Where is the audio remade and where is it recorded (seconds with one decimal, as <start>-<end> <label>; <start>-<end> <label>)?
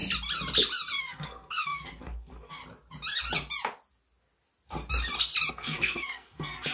0.0-1.0 recorded; 1.0-2.6 remade; 2.6-5.5 recorded; 5.5-6.7 remade